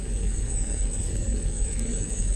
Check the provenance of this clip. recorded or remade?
remade